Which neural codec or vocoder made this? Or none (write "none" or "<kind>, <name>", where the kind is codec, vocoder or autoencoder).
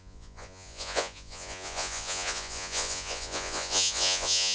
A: vocoder, Vocos